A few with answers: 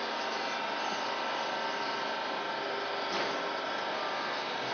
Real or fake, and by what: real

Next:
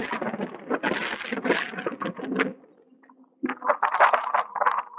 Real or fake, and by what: real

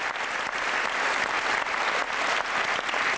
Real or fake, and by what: real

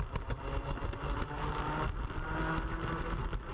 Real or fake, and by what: real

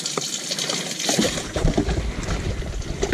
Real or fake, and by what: real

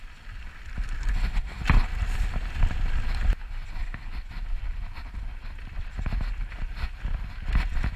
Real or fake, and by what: real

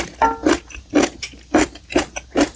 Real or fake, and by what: real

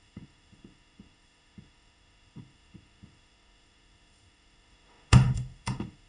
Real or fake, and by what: fake, autoencoder, DAC-VAE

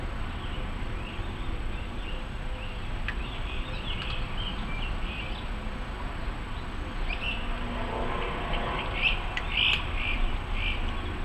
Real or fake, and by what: real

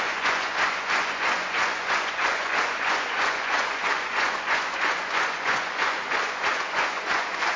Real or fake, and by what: fake, vocoder, Vocos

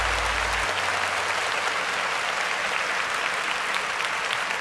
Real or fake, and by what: real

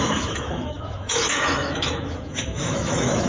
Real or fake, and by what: fake, autoencoder, DAC-VAE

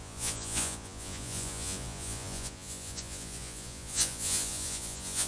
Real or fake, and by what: fake, vocoder, Vocos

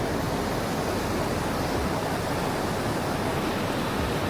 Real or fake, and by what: real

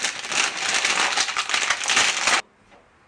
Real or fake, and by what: real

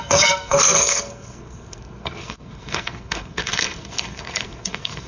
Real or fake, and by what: fake, codec, SNAC